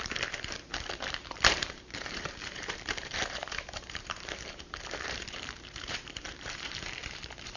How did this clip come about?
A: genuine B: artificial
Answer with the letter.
B